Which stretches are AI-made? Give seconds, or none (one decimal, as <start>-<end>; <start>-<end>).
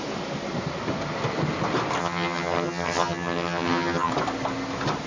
2.0-4.1